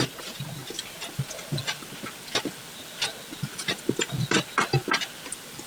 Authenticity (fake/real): real